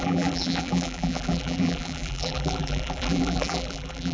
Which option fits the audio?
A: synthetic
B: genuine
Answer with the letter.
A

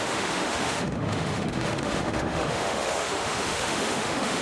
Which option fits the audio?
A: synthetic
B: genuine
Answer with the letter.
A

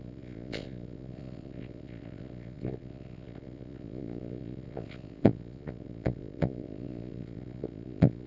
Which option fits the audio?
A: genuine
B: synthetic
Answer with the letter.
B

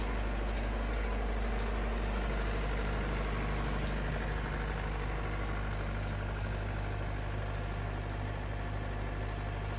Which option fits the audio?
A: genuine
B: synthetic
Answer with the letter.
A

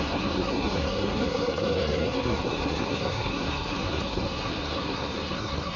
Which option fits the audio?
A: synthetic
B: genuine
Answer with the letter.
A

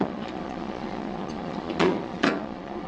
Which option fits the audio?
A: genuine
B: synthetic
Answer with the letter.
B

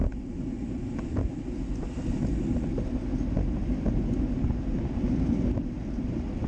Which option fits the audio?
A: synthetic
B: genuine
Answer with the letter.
B